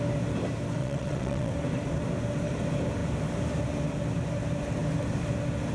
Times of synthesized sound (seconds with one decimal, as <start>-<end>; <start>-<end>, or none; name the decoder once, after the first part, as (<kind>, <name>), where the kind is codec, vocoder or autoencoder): 0.8-1.5 (vocoder, WaveNeXt)